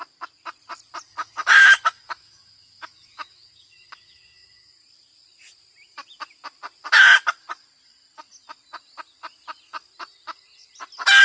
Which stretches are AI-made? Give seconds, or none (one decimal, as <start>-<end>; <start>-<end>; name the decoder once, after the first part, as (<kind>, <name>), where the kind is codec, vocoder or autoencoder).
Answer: 1.1-4.7 (autoencoder, DAC-VAE)